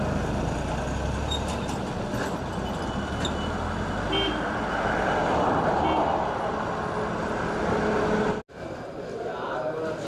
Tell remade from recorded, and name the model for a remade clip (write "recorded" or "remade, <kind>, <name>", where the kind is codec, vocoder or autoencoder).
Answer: recorded